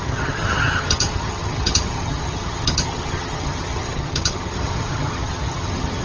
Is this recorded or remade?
remade